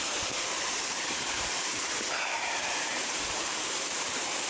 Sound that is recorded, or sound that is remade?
remade